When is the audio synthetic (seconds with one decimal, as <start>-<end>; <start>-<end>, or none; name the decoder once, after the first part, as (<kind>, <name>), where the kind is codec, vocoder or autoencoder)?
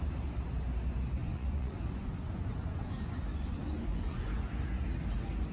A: 1.2-4.5 (vocoder, Vocos)